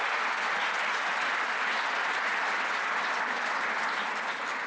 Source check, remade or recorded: recorded